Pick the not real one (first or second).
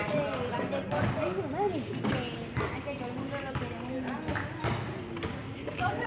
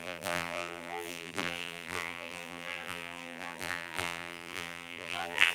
second